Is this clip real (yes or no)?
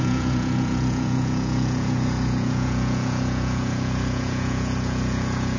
no